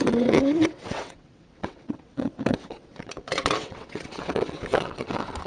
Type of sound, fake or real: fake